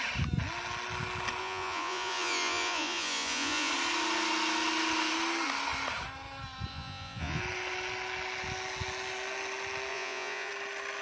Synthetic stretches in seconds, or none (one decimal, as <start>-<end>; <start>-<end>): 1.4-3.7; 6.7-7.4; 9.9-10.5